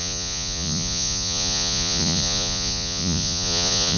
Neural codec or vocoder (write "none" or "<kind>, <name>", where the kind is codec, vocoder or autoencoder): vocoder, Vocos